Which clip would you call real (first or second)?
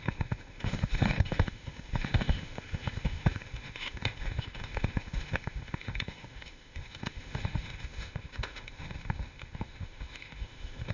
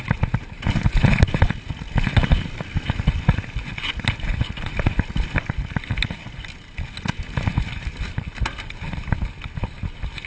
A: second